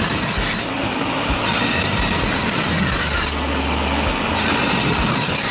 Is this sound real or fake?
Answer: real